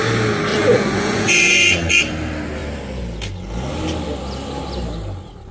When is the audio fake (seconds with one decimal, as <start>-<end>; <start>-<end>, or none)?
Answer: 0.5-2.0